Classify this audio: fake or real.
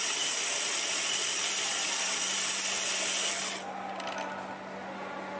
real